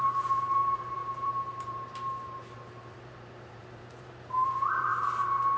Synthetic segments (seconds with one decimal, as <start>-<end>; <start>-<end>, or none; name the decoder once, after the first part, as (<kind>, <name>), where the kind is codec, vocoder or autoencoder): 0.0-4.9 (vocoder, BigVGAN v2)